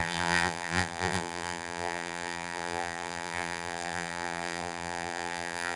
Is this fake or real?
fake